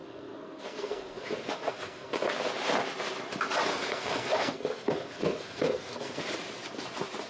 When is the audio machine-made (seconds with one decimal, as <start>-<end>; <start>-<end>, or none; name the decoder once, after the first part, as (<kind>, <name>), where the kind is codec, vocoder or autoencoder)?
0.0-2.3 (codec, SNAC); 3.7-6.2